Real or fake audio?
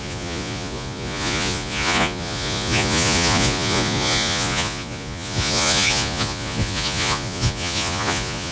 fake